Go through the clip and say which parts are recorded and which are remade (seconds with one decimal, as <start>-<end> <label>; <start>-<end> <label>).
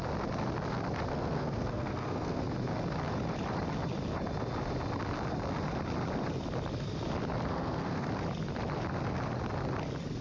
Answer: 0.0-1.1 recorded; 1.1-2.4 remade; 2.4-7.5 recorded; 7.5-8.1 remade; 8.1-10.2 recorded